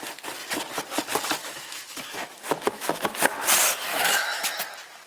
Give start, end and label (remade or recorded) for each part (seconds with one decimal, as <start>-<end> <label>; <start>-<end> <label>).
0.0-1.4 recorded; 1.4-3.1 remade; 3.1-3.9 recorded; 3.9-4.6 remade; 4.6-5.1 recorded